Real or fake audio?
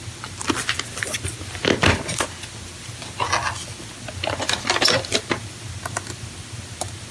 real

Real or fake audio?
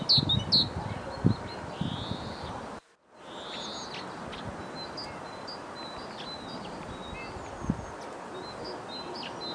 real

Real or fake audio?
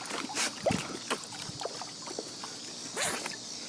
real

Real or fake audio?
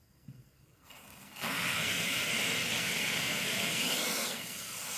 fake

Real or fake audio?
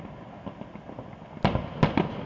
real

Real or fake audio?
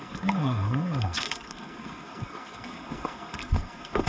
fake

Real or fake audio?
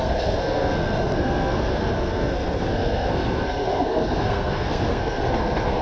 fake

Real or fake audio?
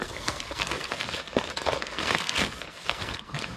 fake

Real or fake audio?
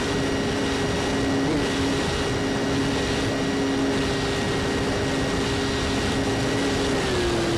real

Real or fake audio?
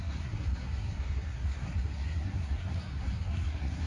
fake